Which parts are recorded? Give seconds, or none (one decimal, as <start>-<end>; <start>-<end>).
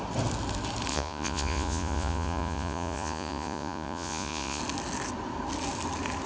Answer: 0.0-0.9; 4.6-6.3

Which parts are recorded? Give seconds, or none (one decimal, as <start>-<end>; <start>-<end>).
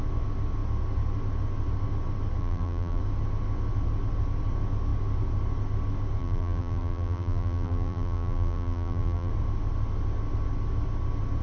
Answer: 0.0-2.4; 3.0-6.2; 9.3-11.4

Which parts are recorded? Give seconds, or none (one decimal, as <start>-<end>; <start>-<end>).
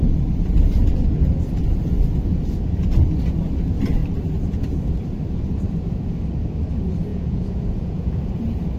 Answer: 0.0-7.1; 8.3-8.8